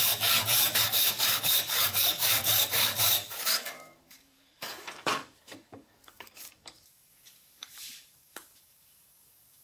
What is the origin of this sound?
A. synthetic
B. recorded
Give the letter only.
A